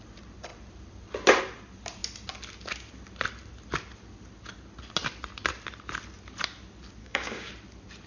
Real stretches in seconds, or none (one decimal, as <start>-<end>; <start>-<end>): 0.0-7.0; 7.5-8.1